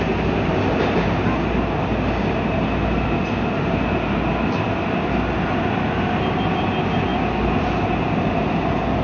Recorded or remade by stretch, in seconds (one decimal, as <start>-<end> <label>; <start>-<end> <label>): 0.0-9.0 recorded